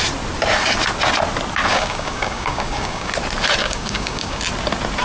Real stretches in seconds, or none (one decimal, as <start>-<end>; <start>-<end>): 0.0-1.7; 3.1-3.6; 4.4-5.0